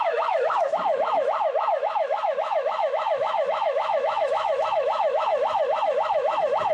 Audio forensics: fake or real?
fake